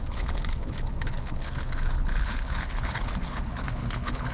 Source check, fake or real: fake